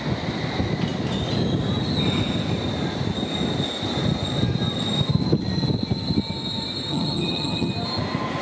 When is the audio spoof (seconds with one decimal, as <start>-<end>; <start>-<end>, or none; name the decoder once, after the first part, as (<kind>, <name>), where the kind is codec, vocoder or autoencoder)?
6.9-7.7 (vocoder, HiFi-GAN)